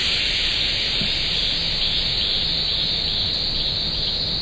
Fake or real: real